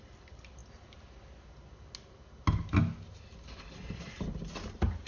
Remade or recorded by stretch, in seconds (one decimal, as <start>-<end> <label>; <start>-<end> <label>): 0.0-0.6 remade; 0.6-3.6 recorded; 3.6-5.1 remade